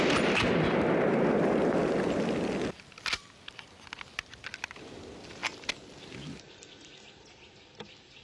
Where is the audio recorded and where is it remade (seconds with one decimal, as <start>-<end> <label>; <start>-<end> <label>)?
0.0-8.2 recorded